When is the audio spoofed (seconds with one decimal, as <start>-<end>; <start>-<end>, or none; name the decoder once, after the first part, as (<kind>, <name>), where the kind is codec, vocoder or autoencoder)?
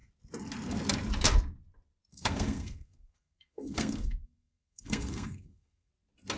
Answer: 2.1-5.9 (codec, SNAC)